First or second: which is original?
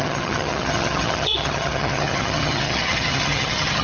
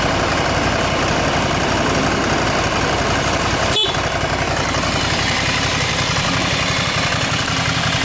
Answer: second